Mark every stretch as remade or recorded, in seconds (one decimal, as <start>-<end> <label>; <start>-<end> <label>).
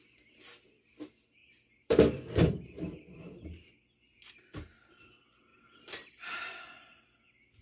0.0-1.4 recorded; 1.4-3.7 remade; 3.7-5.5 recorded; 5.5-6.6 remade; 6.6-7.6 recorded